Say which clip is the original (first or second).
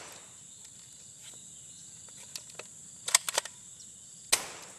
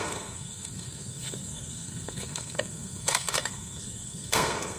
first